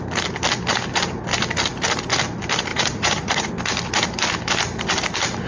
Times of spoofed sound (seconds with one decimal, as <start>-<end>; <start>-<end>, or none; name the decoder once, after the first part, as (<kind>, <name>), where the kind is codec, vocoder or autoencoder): 2.7-3.5 (vocoder, Vocos)